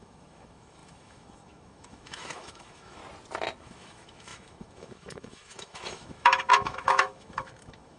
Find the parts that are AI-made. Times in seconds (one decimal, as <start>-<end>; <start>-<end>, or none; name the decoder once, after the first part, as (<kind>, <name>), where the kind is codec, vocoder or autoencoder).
0.0-3.0 (autoencoder, DAC-VAE); 3.6-8.0